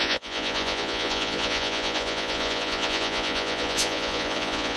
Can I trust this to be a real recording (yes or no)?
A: no